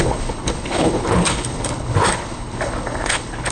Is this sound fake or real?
fake